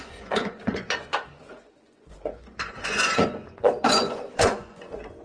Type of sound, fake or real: fake